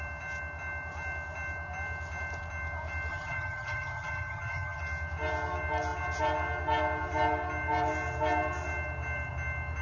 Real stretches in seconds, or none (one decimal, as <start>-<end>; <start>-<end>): 0.0-3.1; 4.8-9.8